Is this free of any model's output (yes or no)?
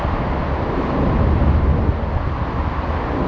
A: yes